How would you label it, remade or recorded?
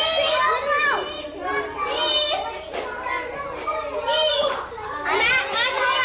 recorded